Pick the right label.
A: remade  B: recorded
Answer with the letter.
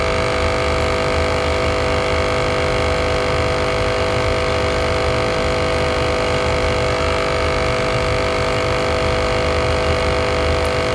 B